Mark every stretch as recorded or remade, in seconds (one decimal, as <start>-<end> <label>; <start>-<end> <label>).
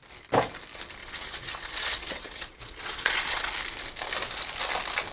0.0-1.0 recorded; 1.0-3.5 remade; 3.5-5.1 recorded